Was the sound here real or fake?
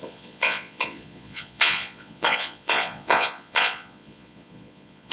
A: fake